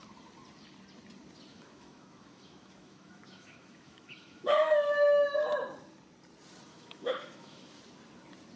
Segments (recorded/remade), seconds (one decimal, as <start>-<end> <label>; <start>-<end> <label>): 0.0-1.5 recorded; 1.5-5.3 remade; 5.3-6.7 recorded; 6.7-7.8 remade; 7.8-8.6 recorded